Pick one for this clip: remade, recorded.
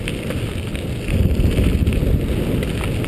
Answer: recorded